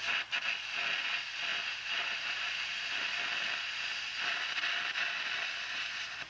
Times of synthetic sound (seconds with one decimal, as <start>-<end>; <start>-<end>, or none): 1.5-3.1